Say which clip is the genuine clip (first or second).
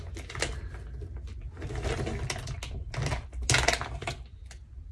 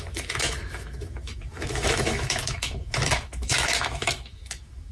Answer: first